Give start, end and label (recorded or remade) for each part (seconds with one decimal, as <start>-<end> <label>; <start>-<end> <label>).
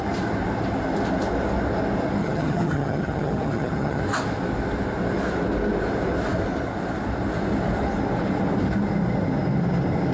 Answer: 0.0-2.2 recorded; 2.2-4.0 remade; 4.0-10.1 recorded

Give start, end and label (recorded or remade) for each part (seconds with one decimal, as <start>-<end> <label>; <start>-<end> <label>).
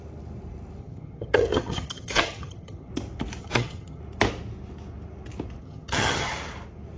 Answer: 0.0-0.8 recorded; 0.8-2.9 remade; 2.9-3.4 recorded; 3.4-4.0 remade; 4.0-5.6 recorded; 5.6-6.3 remade; 6.3-7.0 recorded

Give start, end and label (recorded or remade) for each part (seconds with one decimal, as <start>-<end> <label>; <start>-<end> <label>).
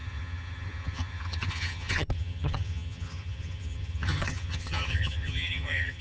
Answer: 0.0-6.0 remade